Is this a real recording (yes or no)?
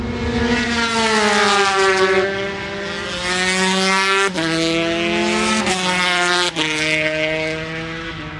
yes